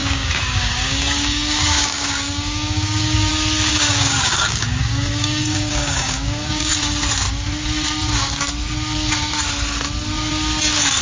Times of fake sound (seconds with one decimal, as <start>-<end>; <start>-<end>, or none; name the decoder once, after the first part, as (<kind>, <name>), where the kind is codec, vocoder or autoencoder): 0.0-3.3 (codec, DAC); 3.7-6.7